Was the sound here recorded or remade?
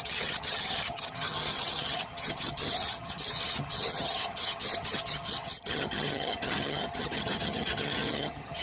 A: remade